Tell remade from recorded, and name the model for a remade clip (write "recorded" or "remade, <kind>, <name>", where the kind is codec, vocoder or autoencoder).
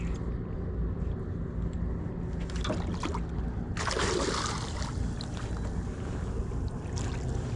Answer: recorded